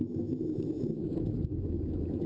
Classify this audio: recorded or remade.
remade